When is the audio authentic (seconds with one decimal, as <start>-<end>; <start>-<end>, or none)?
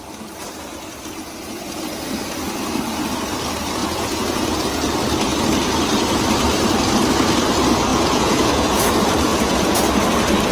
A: 0.0-3.8; 4.6-7.9; 8.9-9.3; 9.9-10.5